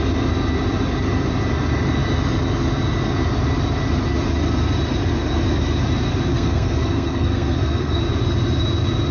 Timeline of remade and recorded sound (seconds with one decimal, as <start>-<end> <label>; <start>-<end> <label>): 0.0-6.3 recorded; 6.3-8.0 remade; 8.0-9.1 recorded